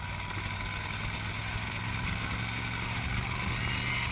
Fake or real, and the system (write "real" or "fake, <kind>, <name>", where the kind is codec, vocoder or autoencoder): real